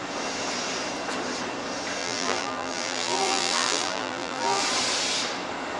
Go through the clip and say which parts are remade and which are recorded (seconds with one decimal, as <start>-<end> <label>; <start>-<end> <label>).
0.0-2.0 recorded; 2.0-4.6 remade; 4.6-5.8 recorded